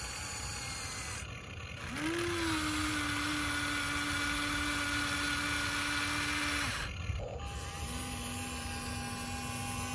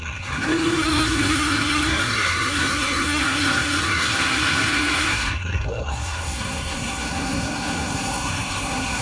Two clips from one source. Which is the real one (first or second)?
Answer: first